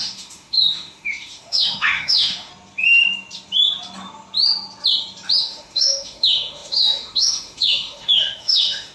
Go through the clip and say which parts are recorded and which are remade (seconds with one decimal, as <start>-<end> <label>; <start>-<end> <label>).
0.0-2.5 remade; 2.5-5.4 recorded; 5.4-8.9 remade